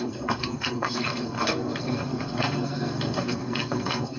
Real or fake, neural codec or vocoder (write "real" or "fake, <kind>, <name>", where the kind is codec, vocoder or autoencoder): fake, codec, SNAC